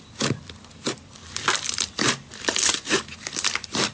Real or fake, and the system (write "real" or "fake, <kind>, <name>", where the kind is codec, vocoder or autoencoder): fake, vocoder, BigVGAN v2